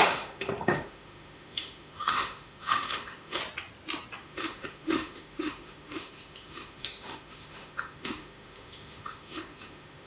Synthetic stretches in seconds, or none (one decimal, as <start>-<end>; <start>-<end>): 0.0-3.4; 4.2-10.1